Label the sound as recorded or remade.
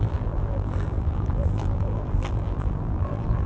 remade